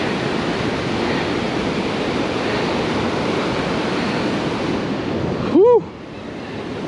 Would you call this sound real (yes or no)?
yes